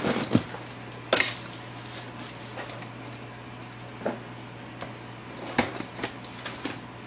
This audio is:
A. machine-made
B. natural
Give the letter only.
B